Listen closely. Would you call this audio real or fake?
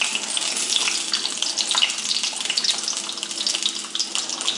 real